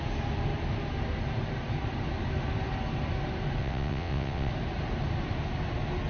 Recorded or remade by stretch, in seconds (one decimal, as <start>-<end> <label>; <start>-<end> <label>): 0.0-3.6 recorded; 3.6-4.5 remade; 4.5-6.1 recorded